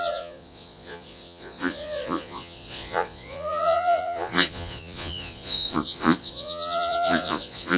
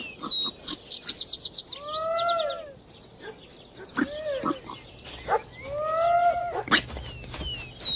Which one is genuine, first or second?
second